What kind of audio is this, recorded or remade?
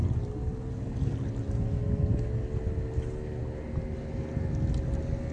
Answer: recorded